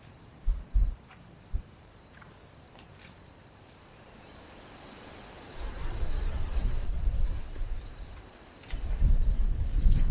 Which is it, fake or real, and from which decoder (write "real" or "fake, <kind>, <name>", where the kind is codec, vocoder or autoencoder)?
fake, vocoder, BigVGAN v2